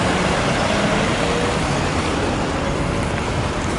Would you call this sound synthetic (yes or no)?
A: no